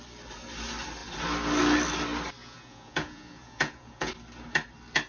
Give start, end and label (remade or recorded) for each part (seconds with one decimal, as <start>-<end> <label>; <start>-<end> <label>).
0.0-2.4 recorded; 2.4-4.1 remade; 4.1-5.1 recorded